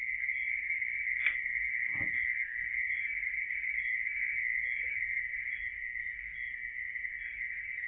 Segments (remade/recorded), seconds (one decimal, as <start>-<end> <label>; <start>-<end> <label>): 0.0-1.5 remade; 1.5-2.8 recorded; 2.8-7.9 remade